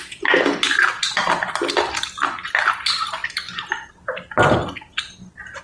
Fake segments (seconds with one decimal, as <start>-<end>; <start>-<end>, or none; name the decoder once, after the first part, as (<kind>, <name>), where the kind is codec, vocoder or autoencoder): none